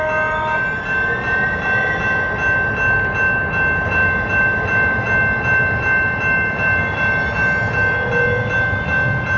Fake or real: real